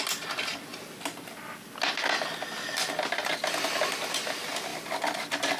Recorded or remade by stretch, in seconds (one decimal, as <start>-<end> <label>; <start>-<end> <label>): 0.0-4.7 recorded; 4.7-5.6 remade